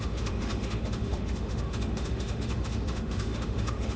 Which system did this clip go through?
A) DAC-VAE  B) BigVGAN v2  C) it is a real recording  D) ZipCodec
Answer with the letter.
A